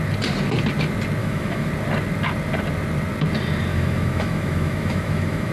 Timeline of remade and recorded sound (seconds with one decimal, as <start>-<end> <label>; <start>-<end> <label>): 0.0-1.2 recorded; 1.2-1.7 remade; 1.7-3.7 recorded; 3.7-5.5 remade

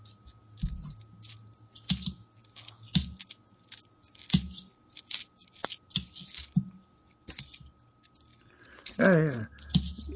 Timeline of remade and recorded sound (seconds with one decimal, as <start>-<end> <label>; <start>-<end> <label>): 0.0-10.2 recorded

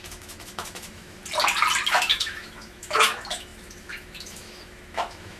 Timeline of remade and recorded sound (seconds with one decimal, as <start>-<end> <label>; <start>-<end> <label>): 0.0-1.2 remade; 1.2-1.9 recorded; 1.9-5.4 remade

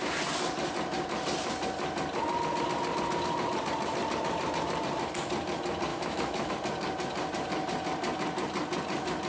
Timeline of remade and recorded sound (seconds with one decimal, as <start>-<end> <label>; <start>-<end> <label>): 0.0-5.9 recorded; 5.9-6.5 remade; 6.5-9.3 recorded

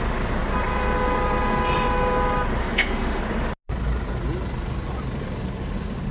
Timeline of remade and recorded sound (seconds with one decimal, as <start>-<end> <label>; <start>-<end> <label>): 0.0-2.6 recorded; 2.6-3.2 remade; 3.2-6.1 recorded

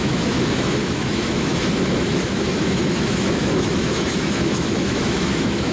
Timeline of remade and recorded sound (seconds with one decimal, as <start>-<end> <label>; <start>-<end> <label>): 0.0-5.7 remade

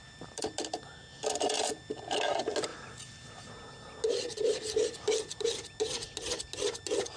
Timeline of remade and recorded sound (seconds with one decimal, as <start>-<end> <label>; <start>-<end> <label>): 0.0-7.2 recorded